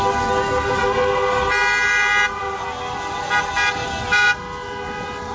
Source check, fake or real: real